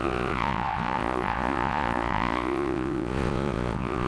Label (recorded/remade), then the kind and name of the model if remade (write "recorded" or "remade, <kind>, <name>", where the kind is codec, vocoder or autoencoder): remade, vocoder, Vocos